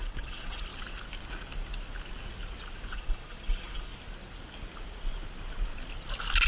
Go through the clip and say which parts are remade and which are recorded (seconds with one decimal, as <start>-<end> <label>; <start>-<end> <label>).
0.0-0.7 remade; 0.7-2.9 recorded; 2.9-3.9 remade; 3.9-6.5 recorded